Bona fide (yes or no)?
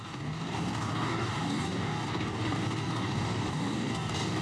no